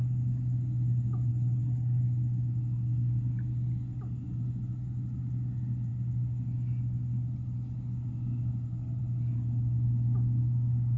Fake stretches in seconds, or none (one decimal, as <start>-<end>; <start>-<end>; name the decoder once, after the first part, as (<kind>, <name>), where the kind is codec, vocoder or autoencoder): 1.3-2.0 (codec, HILCodec)